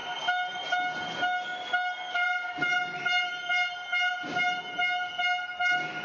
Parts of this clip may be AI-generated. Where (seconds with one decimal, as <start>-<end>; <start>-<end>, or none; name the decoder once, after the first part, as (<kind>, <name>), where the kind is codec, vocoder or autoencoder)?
none